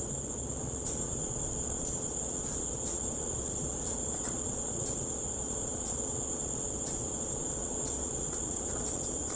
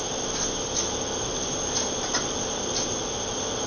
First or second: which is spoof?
first